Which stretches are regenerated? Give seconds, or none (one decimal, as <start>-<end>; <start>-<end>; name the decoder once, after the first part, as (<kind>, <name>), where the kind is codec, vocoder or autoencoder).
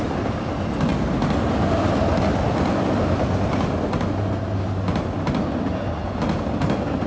none